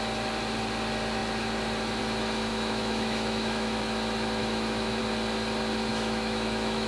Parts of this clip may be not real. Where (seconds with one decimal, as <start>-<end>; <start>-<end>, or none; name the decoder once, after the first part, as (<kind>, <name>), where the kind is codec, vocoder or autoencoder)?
2.5-3.8 (autoencoder, DAC-VAE); 4.4-5.0; 5.9-6.9